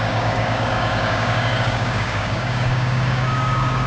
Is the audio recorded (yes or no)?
no